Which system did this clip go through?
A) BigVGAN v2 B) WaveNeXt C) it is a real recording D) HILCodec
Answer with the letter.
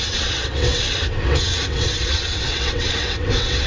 B